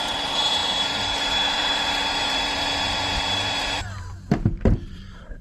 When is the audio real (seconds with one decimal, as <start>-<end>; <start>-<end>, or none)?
none